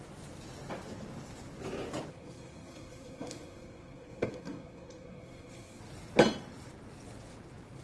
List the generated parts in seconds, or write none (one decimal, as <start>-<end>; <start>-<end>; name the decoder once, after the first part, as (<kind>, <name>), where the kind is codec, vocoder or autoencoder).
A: 2.1-5.8 (codec, SNAC)